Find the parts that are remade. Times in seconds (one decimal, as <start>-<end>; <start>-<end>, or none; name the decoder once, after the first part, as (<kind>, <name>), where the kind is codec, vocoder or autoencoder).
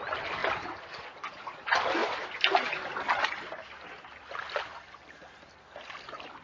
none